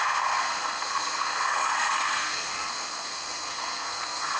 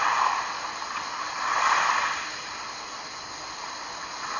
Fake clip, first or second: first